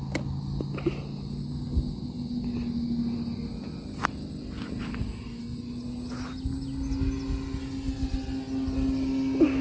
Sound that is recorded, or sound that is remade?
recorded